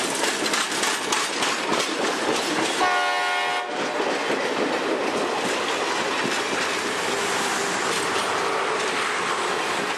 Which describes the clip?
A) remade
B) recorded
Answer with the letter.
B